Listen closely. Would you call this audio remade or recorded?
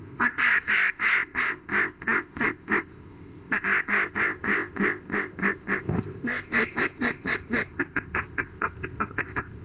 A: remade